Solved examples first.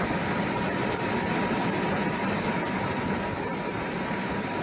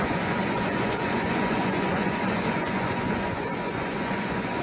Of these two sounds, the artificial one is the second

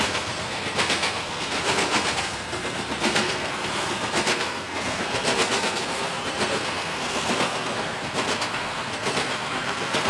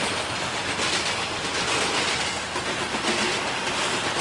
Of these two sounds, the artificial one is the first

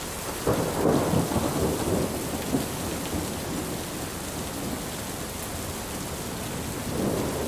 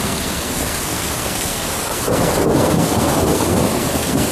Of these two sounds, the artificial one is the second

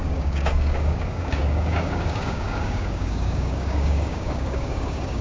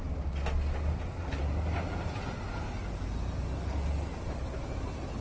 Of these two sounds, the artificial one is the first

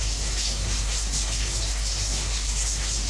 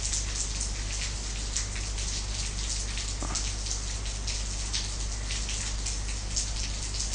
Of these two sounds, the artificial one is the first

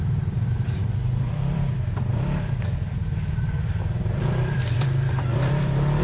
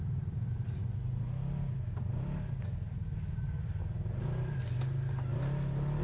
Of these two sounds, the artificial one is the first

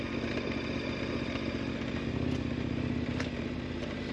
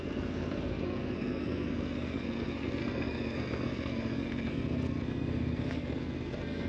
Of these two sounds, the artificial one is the second